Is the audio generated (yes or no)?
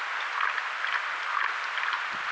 no